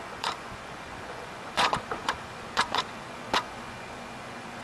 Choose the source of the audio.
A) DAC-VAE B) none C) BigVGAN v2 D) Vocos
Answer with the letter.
D